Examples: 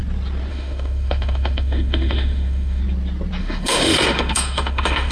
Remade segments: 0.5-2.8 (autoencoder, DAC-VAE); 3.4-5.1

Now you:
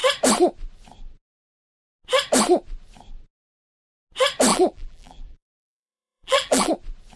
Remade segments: 4.5-6.7 (vocoder, BigVGAN v2)

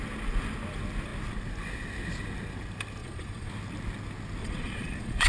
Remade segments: 3.0-3.5 (vocoder, Vocos); 4.4-5.3

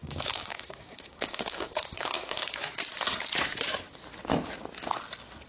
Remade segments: 0.0-2.6 (codec, DAC)

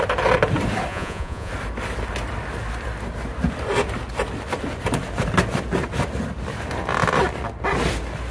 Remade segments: 0.9-1.5 (vocoder, Vocos)